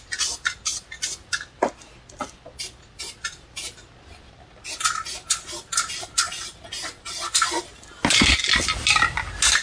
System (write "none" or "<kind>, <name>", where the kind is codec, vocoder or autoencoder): none